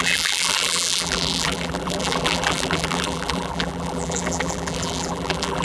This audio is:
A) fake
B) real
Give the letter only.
A